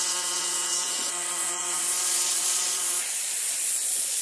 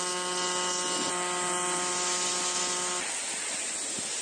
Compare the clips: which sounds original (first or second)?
second